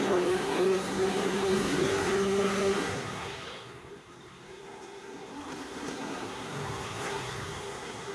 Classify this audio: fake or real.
fake